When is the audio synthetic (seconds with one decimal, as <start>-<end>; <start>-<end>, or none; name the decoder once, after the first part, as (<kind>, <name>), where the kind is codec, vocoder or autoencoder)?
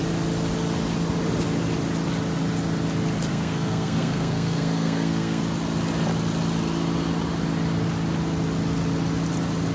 3.3-5.4 (codec, SNAC)